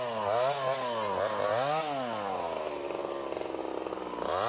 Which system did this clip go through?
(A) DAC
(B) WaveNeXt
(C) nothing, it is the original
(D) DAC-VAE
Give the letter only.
C